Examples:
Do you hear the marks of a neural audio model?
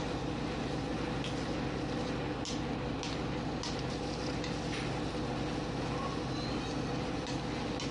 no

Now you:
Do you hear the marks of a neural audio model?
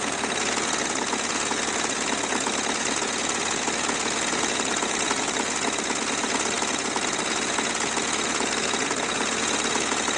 yes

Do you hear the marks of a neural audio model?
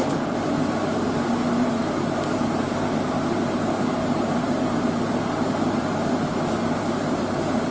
yes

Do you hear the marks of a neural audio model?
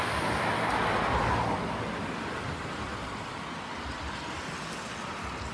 no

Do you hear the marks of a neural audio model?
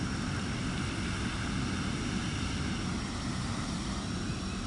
no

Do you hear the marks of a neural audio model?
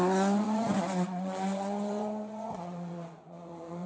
yes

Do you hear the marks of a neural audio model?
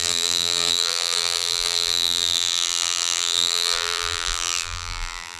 yes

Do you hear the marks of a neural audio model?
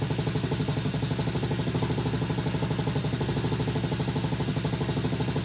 no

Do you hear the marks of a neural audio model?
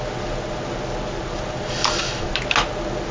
no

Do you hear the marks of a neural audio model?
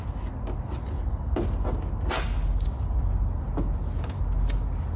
no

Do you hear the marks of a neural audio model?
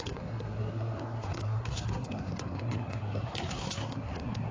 yes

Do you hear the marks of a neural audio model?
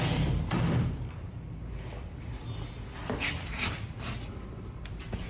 yes